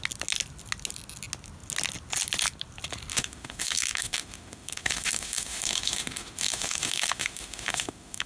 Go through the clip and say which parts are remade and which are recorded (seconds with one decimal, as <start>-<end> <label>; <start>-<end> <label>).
0.0-3.1 recorded; 3.1-8.3 remade